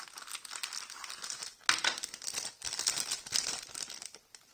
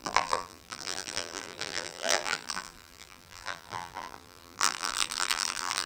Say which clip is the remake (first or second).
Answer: second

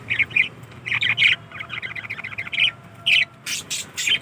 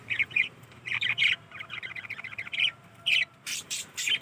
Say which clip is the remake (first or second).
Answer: second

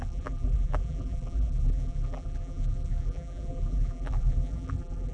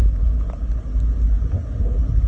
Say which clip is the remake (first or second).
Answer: first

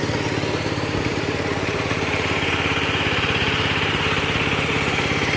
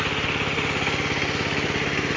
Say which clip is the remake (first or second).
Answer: first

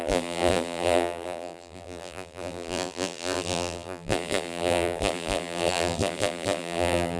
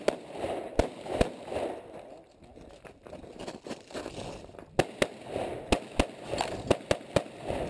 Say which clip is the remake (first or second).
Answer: first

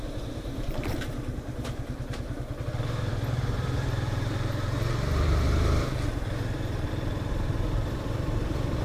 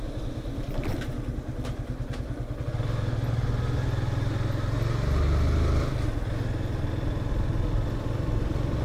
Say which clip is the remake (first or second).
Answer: first